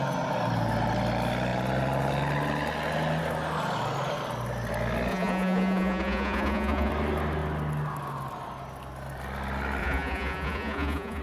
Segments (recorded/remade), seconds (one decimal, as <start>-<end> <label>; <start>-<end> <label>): 0.0-5.1 recorded; 5.1-6.9 remade; 6.9-9.8 recorded; 9.8-11.2 remade